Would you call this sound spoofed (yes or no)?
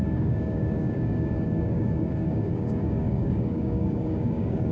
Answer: yes